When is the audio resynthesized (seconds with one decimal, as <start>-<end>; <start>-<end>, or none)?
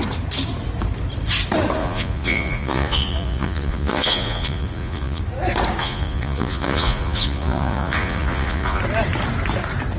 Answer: 1.8-5.2; 5.8-8.8